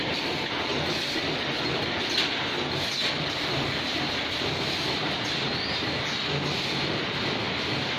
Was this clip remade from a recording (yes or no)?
no